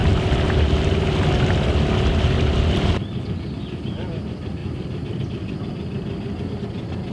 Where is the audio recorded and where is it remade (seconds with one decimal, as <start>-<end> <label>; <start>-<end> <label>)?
0.0-4.6 recorded; 4.6-5.2 remade; 5.2-7.1 recorded